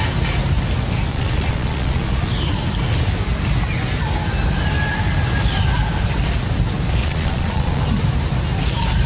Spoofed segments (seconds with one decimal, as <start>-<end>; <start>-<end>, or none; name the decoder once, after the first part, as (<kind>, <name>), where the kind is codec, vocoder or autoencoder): 1.1-2.3 (vocoder, Vocos); 7.0-7.8